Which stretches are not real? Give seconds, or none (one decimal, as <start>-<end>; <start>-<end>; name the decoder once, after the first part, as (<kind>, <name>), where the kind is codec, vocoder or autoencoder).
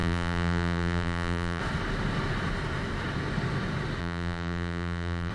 0.0-1.6 (vocoder, BigVGAN v2); 4.0-5.3